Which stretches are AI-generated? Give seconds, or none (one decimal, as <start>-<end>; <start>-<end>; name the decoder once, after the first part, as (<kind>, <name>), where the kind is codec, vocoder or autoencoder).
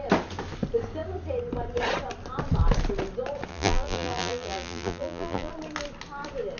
3.5-5.5 (vocoder, BigVGAN v2)